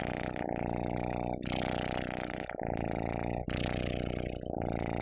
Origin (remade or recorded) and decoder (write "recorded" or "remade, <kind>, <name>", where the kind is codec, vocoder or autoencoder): recorded